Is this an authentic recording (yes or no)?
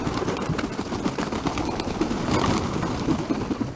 yes